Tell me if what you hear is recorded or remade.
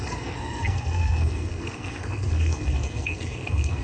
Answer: remade